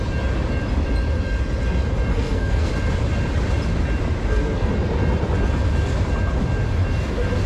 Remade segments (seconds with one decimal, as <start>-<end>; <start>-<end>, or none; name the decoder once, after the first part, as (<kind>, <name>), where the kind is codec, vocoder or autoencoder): 2.1-2.7 (codec, SNAC); 4.2-4.7